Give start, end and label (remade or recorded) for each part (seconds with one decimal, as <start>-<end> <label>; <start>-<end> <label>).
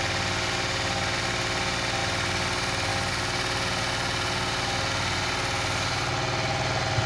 0.0-7.1 recorded